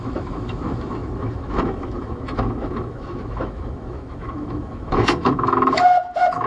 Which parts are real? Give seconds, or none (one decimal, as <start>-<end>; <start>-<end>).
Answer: none